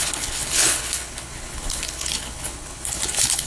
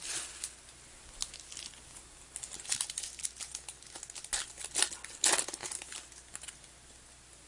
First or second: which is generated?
first